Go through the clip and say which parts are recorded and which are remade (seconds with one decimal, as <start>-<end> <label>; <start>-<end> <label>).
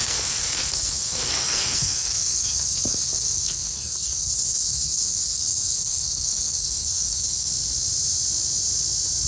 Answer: 0.0-7.5 remade; 7.5-9.3 recorded